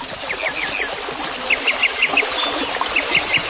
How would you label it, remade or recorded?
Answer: recorded